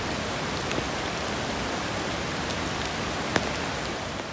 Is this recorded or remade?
recorded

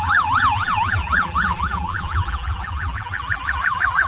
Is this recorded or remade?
remade